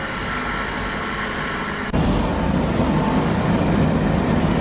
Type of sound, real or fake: real